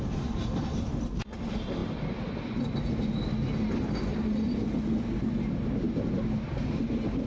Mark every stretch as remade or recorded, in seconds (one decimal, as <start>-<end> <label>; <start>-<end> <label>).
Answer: 0.0-7.3 recorded